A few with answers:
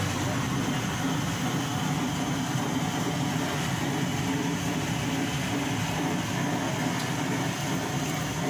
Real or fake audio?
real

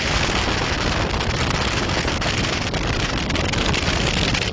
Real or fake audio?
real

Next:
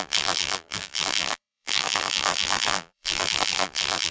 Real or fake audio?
fake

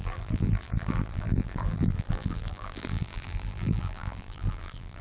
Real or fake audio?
fake